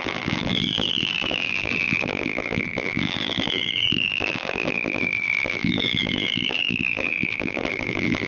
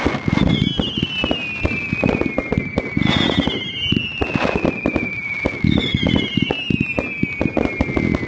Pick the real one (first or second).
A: second